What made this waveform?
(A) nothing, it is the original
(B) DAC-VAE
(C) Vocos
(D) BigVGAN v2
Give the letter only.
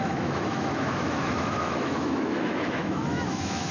B